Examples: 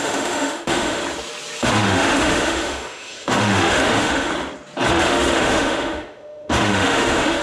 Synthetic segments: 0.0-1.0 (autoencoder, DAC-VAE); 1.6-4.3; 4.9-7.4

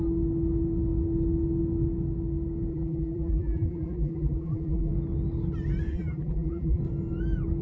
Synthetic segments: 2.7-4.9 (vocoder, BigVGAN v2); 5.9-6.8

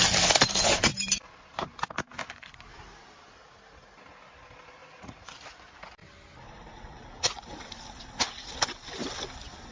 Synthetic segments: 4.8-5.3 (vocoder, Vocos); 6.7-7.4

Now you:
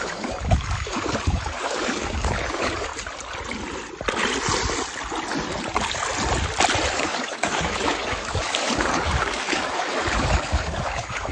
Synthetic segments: 0.0-2.9 (codec, DAC); 6.9-11.3